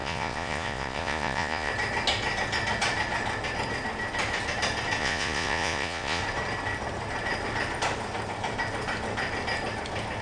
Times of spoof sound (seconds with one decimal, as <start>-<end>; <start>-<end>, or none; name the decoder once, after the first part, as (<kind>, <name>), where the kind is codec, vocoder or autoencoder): 0.0-1.7 (vocoder, Vocos); 5.0-6.2